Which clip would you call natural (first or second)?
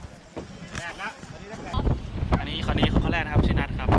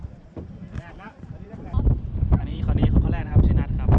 first